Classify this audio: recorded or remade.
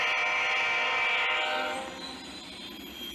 recorded